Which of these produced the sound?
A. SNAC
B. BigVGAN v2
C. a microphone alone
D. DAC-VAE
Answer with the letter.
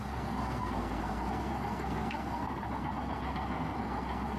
A